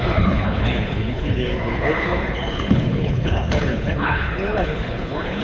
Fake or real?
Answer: fake